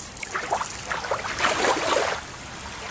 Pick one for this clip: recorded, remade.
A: recorded